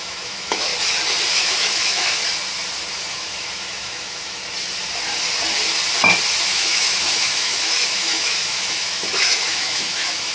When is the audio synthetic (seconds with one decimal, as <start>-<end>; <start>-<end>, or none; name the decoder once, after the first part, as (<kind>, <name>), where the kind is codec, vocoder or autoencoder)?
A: 0.0-0.7 (autoencoder, DAC-VAE); 1.3-2.2; 2.9-4.4; 6.5-10.3